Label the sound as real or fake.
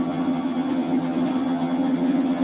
fake